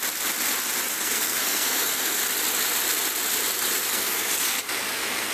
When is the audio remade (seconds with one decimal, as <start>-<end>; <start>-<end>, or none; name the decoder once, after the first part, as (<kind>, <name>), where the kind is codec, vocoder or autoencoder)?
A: 0.9-2.2 (codec, SNAC); 3.8-5.3